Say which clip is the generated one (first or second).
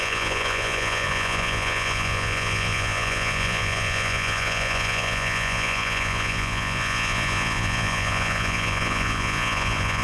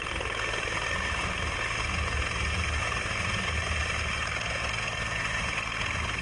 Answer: first